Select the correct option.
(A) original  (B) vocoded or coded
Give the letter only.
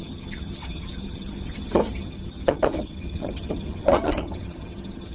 B